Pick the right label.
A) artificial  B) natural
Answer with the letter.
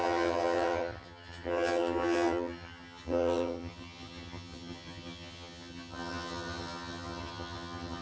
A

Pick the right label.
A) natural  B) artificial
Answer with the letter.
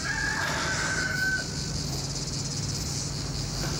A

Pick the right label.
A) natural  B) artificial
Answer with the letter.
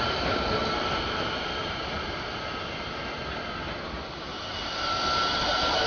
A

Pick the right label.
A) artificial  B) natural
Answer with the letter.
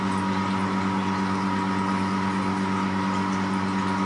B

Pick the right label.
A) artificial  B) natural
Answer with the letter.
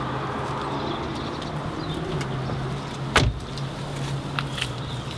B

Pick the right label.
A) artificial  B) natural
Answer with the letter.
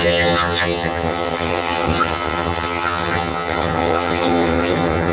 A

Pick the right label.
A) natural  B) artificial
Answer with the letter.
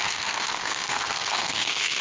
B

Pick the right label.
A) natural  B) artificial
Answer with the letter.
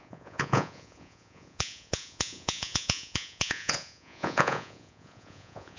B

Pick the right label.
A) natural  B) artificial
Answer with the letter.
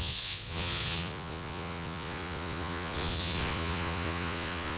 B